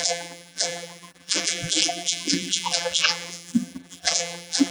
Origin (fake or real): fake